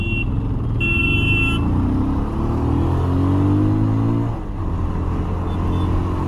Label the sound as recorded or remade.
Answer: recorded